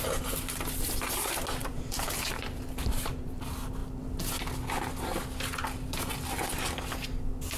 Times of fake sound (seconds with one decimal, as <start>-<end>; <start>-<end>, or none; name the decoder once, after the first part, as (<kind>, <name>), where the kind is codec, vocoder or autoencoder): 1.6-3.4 (vocoder, BigVGAN v2)